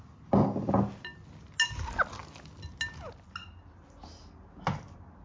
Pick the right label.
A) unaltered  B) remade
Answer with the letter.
A